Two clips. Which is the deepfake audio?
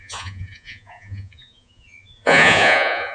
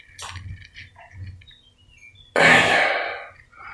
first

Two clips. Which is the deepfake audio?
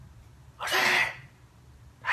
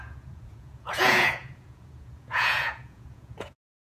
second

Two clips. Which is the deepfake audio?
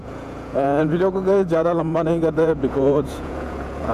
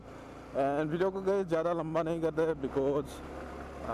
first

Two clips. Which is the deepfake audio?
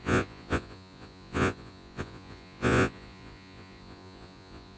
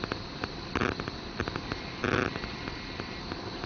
first